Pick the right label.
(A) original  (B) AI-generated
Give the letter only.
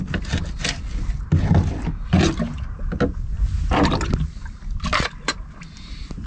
A